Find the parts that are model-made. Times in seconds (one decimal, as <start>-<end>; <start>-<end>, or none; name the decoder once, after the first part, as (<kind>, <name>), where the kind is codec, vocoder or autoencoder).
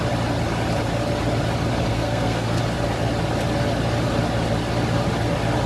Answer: 1.9-2.6 (codec, SNAC)